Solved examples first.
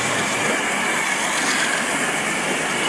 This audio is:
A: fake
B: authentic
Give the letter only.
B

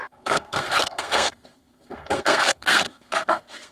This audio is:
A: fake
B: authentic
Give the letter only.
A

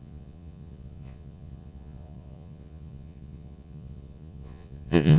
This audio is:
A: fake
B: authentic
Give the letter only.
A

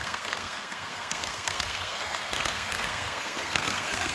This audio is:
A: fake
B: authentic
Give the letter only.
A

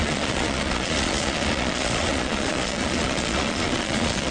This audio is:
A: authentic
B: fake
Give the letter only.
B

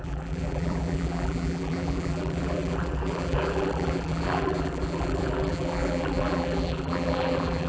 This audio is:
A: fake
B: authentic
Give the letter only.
A